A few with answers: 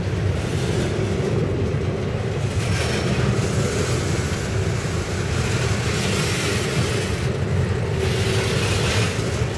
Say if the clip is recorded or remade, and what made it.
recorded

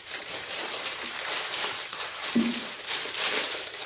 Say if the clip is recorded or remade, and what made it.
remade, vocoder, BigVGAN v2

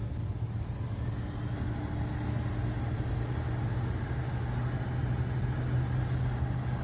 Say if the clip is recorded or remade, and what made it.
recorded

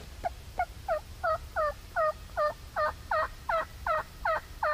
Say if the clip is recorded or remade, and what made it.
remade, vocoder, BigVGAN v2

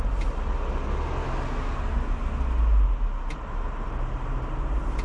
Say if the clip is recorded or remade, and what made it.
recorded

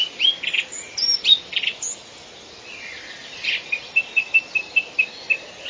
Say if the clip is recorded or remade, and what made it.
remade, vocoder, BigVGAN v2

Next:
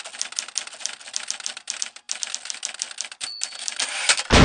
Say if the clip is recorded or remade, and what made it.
recorded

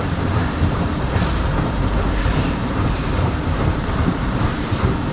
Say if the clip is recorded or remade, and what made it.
remade, vocoder, BigVGAN v2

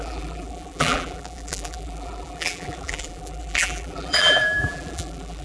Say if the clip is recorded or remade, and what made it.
remade, vocoder, BigVGAN v2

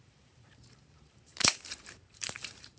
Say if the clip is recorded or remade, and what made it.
remade, vocoder, BigVGAN v2